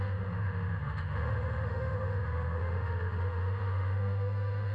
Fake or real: fake